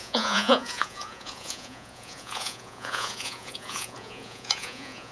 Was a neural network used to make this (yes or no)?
yes